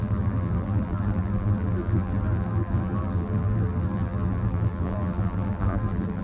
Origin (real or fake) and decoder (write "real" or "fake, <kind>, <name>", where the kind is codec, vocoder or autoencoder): fake, vocoder, BigVGAN v2